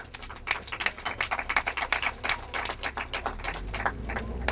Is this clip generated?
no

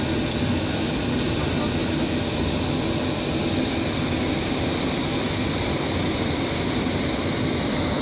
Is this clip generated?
no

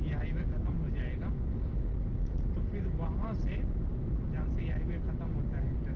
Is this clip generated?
no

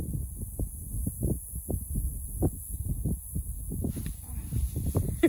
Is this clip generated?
no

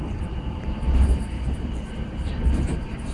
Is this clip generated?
yes